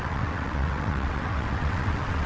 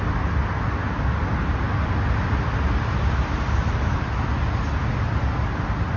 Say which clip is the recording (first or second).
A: second